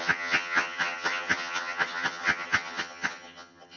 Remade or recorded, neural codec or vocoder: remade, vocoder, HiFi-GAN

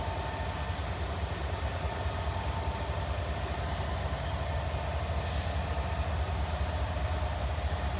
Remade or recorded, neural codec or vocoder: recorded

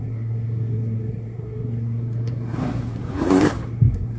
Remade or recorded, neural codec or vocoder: remade, codec, SNAC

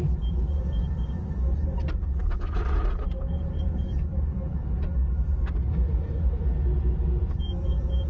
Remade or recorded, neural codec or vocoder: remade, vocoder, BigVGAN v2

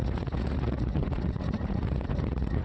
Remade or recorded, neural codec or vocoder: remade, vocoder, Vocos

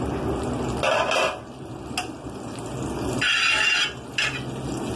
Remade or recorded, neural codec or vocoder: recorded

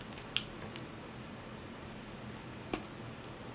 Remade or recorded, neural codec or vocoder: recorded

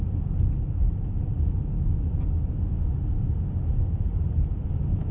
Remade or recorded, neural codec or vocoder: recorded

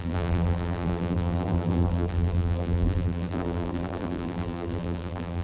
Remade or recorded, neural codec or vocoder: remade, vocoder, BigVGAN v2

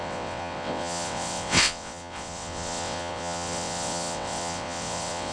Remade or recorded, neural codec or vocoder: remade, vocoder, WaveNeXt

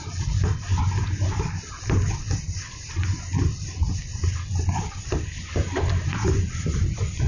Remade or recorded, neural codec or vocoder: recorded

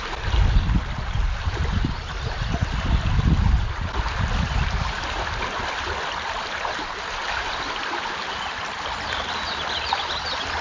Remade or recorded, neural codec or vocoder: recorded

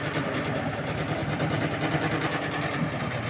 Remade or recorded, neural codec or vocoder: remade, vocoder, BigVGAN v2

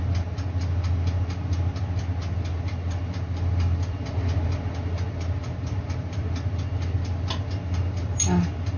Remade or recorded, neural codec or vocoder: recorded